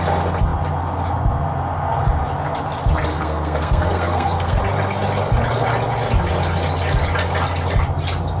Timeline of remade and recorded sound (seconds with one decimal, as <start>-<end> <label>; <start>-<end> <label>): 0.0-3.1 recorded; 3.1-4.6 remade; 4.6-8.4 recorded